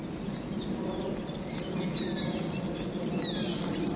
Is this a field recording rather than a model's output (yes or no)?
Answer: yes